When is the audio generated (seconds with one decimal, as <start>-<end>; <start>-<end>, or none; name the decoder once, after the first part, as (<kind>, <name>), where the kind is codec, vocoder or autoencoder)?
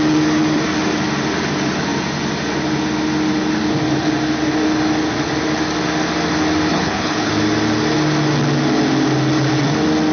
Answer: 6.7-7.3 (codec, HILCodec)